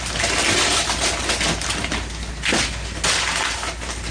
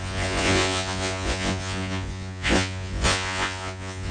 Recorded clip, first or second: first